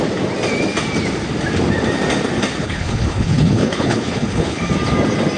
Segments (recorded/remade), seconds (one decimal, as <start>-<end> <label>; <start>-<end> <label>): 0.0-2.6 recorded; 2.6-4.6 remade; 4.6-5.4 recorded